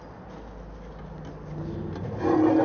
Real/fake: real